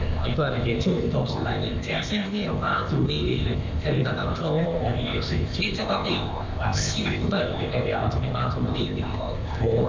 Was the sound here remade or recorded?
remade